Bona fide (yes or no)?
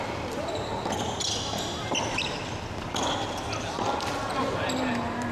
yes